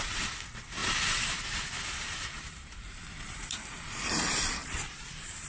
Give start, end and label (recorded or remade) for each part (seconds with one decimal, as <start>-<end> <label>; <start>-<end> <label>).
0.0-0.8 recorded; 0.8-4.1 remade; 4.1-4.6 recorded; 4.6-5.5 remade